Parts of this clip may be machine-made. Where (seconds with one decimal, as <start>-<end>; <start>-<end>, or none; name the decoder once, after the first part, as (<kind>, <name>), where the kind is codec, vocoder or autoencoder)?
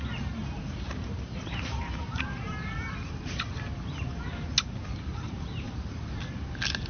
0.4-4.5 (vocoder, BigVGAN v2); 5.1-6.2